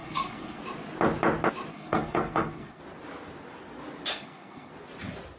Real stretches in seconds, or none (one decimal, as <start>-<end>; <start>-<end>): 0.6-1.7; 2.8-4.1; 4.7-5.4